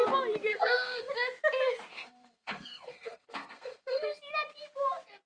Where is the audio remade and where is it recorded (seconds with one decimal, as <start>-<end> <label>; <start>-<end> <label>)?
0.0-0.5 recorded; 0.5-1.1 remade; 1.1-1.9 recorded; 1.9-4.2 remade; 4.2-5.3 recorded

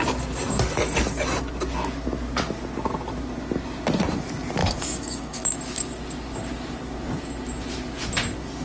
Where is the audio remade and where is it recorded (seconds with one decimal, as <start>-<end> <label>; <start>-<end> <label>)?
0.0-4.6 recorded; 4.6-5.6 remade; 5.6-8.6 recorded

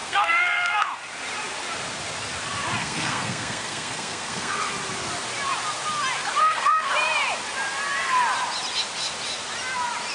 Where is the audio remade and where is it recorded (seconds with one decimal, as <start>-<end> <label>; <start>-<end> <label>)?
0.0-0.9 remade; 0.9-2.8 recorded; 2.8-4.7 remade; 4.7-6.4 recorded; 6.4-6.9 remade; 6.9-10.1 recorded

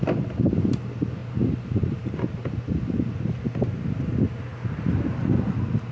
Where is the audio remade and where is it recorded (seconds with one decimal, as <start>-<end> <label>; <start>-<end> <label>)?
0.0-5.9 recorded

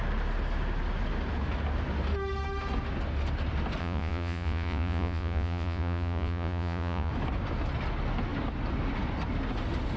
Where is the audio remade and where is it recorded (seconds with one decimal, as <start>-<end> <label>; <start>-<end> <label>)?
0.0-3.8 recorded; 3.8-7.1 remade; 7.1-10.0 recorded

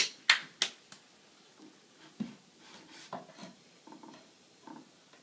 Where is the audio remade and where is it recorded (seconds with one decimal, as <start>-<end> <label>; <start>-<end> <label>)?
0.0-3.4 recorded; 3.4-4.7 remade; 4.7-5.2 recorded

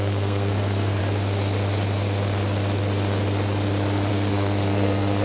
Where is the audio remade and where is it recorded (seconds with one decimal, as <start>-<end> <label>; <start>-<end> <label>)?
0.0-1.0 remade; 1.0-4.1 recorded; 4.1-5.2 remade

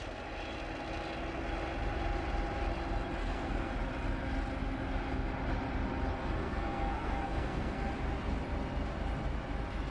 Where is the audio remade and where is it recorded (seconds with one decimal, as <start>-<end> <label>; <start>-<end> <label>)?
0.0-3.2 recorded; 3.2-3.7 remade; 3.7-6.4 recorded; 6.4-7.9 remade; 7.9-9.9 recorded